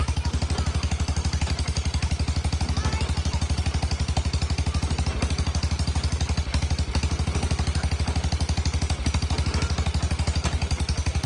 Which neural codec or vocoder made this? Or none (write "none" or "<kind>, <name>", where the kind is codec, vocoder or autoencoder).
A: none